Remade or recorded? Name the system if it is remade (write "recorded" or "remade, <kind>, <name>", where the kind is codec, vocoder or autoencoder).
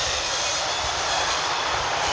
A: recorded